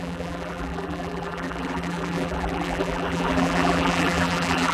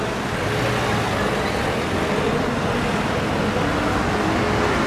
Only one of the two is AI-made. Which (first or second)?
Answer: first